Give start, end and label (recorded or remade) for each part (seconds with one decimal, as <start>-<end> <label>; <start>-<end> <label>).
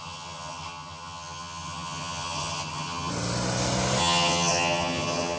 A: 0.0-3.1 remade; 3.1-4.0 recorded; 4.0-5.4 remade